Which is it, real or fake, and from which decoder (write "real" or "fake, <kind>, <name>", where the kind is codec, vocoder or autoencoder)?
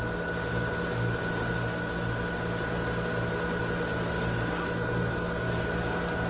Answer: real